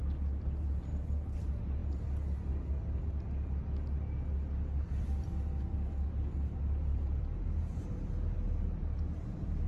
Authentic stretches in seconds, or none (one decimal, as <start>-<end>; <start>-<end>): 0.0-0.9; 1.4-6.9